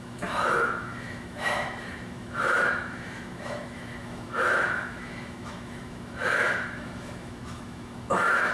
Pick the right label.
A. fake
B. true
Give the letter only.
A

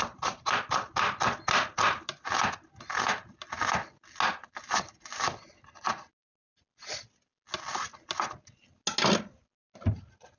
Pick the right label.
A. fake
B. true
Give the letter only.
B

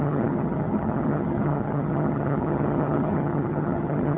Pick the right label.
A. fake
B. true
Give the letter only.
A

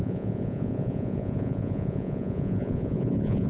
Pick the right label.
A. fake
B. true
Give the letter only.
A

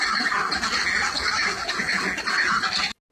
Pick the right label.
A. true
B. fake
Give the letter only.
A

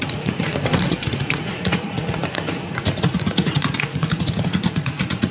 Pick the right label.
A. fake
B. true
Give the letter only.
A